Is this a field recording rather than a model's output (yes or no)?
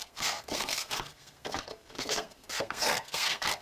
no